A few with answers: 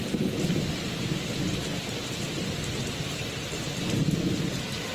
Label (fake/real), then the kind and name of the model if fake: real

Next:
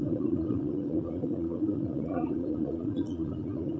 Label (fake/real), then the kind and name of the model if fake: fake, vocoder, Vocos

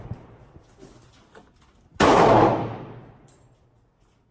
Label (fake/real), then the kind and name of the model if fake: real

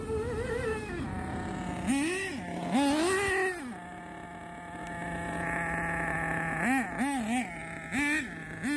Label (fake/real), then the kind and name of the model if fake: real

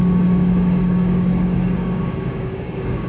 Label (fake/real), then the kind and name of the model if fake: fake, codec, DAC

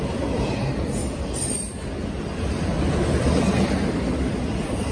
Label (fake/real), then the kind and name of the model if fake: real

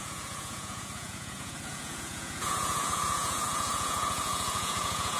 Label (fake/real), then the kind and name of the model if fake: fake, vocoder, Vocos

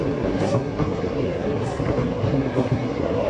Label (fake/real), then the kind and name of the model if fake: fake, codec, SNAC